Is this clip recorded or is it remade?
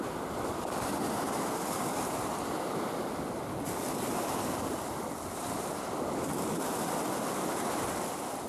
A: recorded